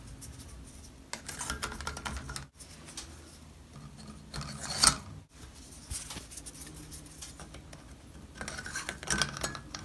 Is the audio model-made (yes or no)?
no